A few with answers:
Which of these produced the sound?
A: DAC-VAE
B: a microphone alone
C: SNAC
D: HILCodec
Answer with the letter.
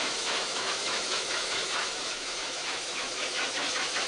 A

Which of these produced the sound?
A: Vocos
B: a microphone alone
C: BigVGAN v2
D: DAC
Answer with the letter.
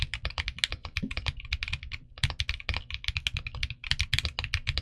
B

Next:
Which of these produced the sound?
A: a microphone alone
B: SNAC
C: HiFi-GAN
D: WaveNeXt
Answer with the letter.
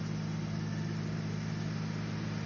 A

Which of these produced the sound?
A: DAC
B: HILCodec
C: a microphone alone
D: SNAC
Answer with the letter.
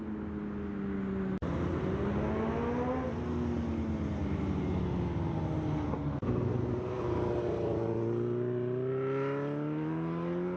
C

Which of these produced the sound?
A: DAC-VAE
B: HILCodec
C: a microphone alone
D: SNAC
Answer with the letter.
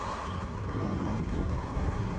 D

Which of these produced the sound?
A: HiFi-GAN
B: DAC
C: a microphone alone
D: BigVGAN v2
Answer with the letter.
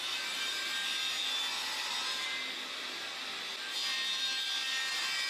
C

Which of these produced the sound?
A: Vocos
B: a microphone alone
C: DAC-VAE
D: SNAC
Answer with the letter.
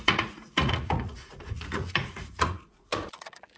A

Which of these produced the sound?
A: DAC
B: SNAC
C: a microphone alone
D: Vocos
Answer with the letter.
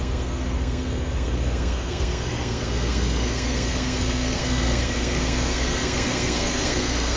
B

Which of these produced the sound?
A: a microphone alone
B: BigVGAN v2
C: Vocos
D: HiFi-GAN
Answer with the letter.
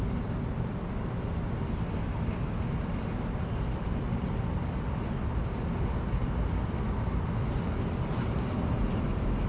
A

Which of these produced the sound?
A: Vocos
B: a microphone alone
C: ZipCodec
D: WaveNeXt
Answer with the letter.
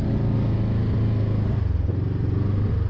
B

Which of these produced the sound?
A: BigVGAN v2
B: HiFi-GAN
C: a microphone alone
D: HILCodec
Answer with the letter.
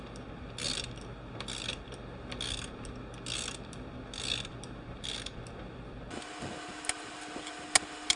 C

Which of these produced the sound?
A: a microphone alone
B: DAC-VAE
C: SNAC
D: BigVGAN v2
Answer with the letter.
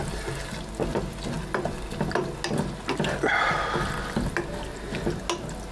A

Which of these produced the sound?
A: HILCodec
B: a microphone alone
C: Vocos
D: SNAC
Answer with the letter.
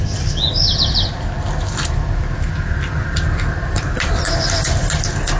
B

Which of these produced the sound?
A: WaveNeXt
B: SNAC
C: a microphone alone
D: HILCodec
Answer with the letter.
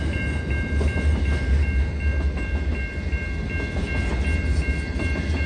C